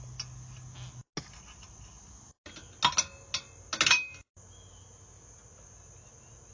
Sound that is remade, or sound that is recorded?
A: recorded